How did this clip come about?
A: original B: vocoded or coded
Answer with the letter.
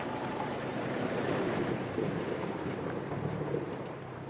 B